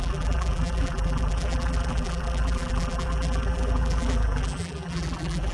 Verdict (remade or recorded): remade